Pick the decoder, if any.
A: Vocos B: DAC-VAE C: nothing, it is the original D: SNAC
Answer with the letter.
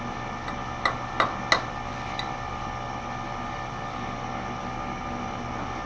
C